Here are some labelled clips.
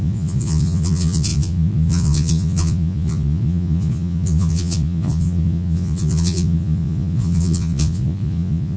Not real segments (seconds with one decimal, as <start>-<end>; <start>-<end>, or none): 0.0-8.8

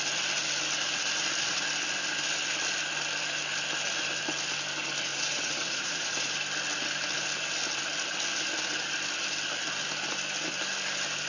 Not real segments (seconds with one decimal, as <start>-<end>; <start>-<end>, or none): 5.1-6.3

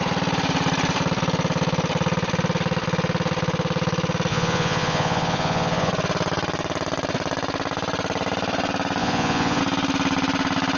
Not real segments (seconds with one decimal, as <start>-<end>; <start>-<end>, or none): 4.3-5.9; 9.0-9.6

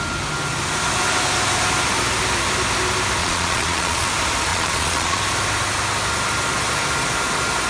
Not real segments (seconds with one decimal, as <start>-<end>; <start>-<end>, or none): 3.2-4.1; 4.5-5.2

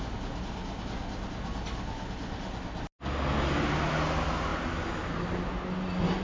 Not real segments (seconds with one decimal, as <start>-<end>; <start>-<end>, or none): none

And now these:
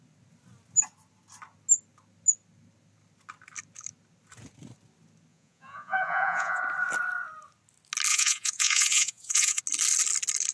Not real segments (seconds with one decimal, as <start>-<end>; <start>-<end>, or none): 5.3-6.6; 8.1-9.6

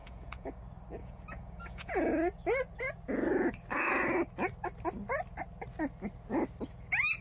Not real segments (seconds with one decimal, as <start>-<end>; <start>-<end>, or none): 0.0-0.6; 1.0-2.1

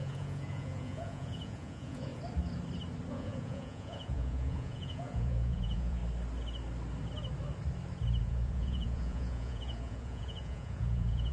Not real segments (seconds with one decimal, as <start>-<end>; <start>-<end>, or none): 0.0-2.1; 3.1-6.0; 8.2-11.3